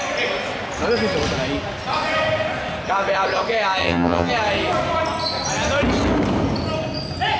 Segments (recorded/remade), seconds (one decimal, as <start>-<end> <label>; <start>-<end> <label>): 0.0-3.8 recorded; 3.8-4.3 remade; 4.3-7.4 recorded